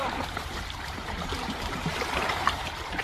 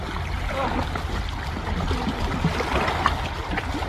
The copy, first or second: first